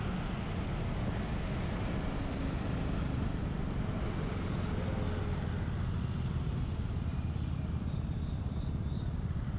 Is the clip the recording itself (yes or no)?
yes